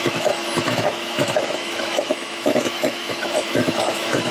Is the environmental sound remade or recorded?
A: remade